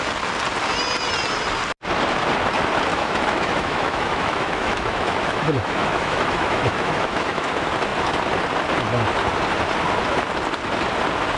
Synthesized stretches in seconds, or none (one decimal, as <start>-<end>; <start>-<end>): 2.9-7.5